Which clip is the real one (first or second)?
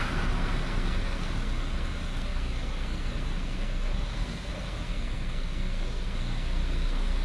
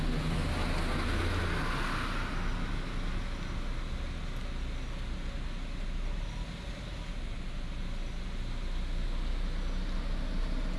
second